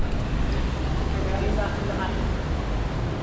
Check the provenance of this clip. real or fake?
real